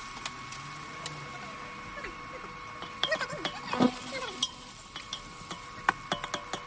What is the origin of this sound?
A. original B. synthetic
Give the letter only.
A